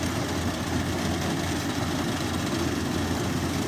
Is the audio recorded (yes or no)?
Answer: yes